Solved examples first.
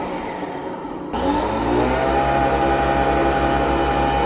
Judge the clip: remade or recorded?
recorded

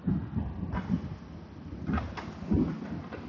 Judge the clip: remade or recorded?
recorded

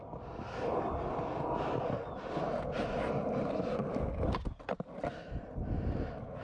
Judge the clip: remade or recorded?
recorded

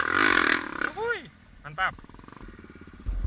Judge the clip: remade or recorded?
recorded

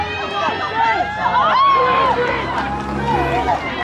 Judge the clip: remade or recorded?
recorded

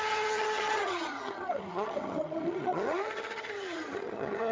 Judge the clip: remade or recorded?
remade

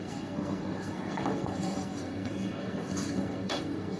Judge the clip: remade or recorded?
remade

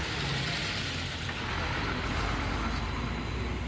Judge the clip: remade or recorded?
recorded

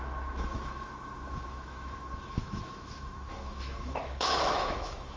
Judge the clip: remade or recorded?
remade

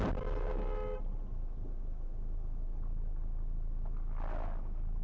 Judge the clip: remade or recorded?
recorded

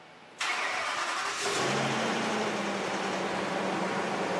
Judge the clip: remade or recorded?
recorded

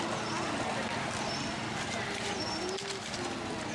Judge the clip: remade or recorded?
recorded